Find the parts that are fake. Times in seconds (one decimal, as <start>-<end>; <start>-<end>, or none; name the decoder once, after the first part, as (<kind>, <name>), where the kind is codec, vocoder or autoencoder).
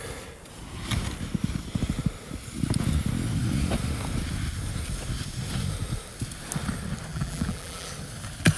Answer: 7.1-7.9 (vocoder, BigVGAN v2)